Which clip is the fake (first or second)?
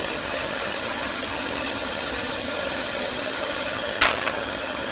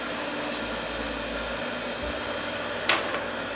first